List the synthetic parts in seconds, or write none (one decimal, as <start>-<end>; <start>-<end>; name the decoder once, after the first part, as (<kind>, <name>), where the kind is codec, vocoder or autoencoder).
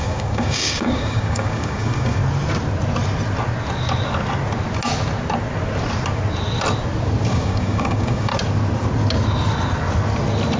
0.0-2.2 (codec, DAC); 7.3-8.3